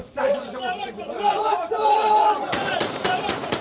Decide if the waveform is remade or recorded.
remade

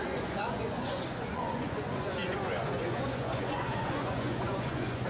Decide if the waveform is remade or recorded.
remade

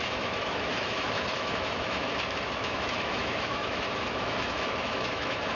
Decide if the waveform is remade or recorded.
remade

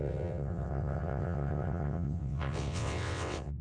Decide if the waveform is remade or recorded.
remade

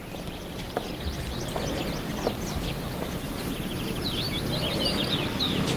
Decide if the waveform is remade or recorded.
recorded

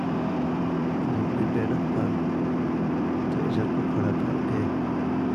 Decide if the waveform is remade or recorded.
remade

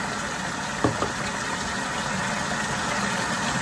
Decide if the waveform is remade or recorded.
recorded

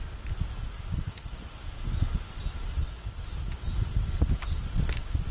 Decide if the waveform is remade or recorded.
recorded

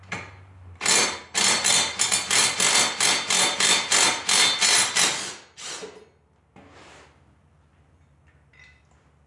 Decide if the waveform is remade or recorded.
recorded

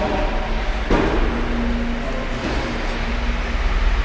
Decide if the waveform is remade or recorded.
recorded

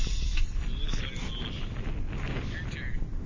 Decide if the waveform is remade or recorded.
recorded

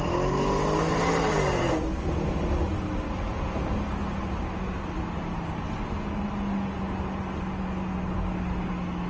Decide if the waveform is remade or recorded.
recorded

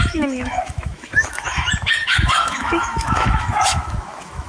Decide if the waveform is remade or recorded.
remade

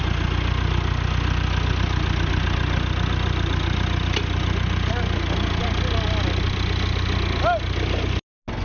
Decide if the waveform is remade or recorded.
recorded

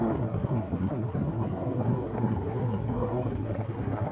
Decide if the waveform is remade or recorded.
remade